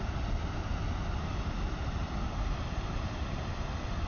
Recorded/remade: remade